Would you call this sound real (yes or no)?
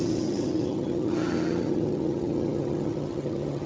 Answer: no